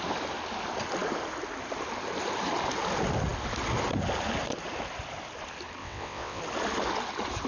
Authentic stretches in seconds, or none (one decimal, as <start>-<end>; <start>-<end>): 0.0-5.8; 6.4-7.5